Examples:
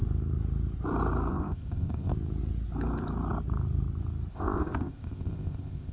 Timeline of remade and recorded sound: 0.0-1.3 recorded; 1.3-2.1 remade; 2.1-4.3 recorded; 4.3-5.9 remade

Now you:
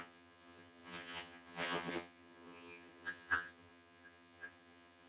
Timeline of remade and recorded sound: 0.0-5.1 remade

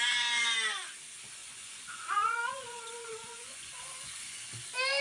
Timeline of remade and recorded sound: 0.0-1.4 recorded; 1.4-4.4 remade; 4.4-5.0 recorded

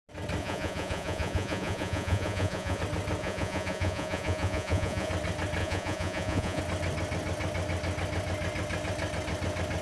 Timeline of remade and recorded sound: 0.0-0.4 recorded; 0.4-2.8 remade; 2.8-3.2 recorded; 3.2-5.1 remade; 5.1-5.6 recorded; 5.6-6.6 remade; 6.6-9.8 recorded

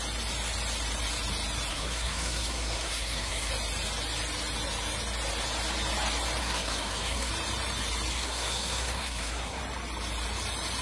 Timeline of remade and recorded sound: 0.0-1.7 recorded; 1.7-3.5 remade; 3.5-6.4 recorded; 6.4-7.3 remade; 7.3-8.1 recorded; 8.1-9.6 remade; 9.6-10.8 recorded